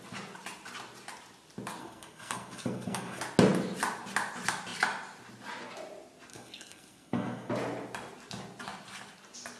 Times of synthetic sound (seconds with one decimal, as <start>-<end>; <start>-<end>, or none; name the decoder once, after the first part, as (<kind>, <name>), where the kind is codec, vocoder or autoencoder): 1.8-3.2 (codec, SNAC); 6.3-7.5